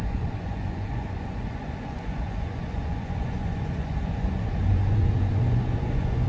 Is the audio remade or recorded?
remade